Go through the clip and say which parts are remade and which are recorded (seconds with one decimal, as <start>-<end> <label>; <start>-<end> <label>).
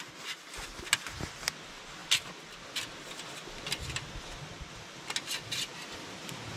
0.0-6.6 recorded